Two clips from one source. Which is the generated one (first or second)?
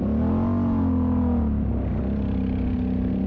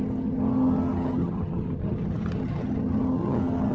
second